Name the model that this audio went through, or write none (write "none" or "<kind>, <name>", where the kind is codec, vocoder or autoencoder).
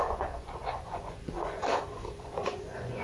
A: vocoder, Vocos